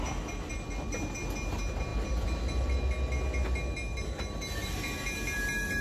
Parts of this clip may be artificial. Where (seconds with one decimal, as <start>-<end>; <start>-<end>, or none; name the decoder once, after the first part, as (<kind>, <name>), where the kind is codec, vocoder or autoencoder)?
none